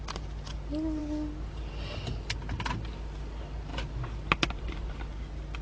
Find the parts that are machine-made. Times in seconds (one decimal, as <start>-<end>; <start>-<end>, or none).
none

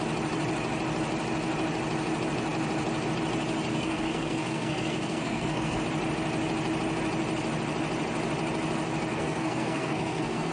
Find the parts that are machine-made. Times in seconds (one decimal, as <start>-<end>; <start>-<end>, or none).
3.7-5.8; 9.1-10.5

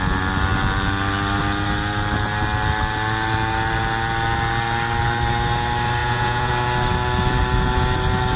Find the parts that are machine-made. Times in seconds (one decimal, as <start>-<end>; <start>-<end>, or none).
6.0-6.5

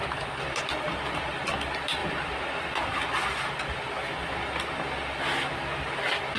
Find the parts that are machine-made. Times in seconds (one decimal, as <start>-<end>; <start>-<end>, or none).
none